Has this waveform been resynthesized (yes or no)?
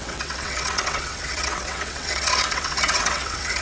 yes